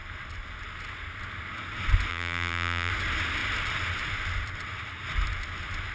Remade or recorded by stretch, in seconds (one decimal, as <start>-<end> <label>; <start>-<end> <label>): 0.0-2.1 recorded; 2.1-2.9 remade; 2.9-5.9 recorded